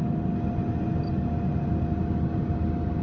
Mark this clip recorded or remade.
recorded